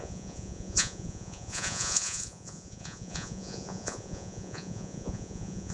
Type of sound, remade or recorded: remade